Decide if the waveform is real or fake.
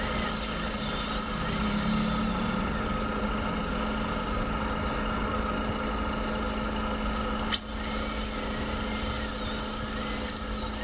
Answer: real